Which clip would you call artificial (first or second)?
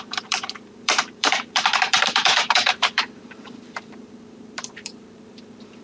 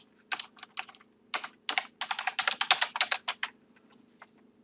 first